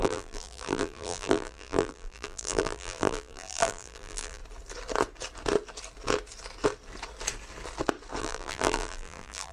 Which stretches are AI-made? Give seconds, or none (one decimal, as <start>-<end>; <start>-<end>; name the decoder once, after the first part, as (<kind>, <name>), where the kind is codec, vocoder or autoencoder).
0.0-4.4 (vocoder, BigVGAN v2); 8.2-9.5